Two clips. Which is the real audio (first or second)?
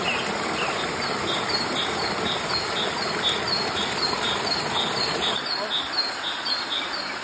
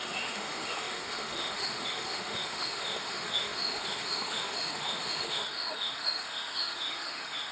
first